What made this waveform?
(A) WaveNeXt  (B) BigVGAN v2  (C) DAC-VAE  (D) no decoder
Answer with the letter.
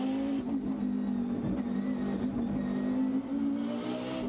D